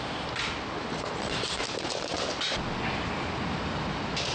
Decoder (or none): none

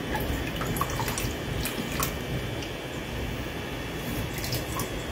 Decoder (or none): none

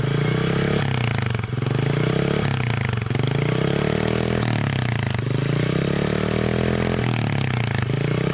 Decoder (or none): none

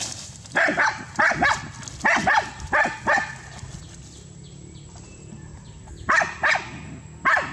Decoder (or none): none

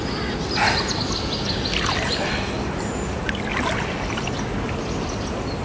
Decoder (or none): none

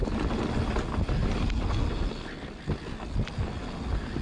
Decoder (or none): none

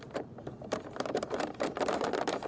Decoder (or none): vocoder, BigVGAN v2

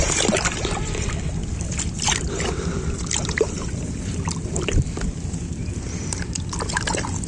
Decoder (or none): vocoder, BigVGAN v2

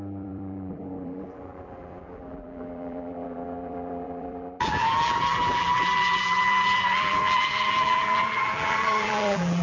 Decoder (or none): vocoder, BigVGAN v2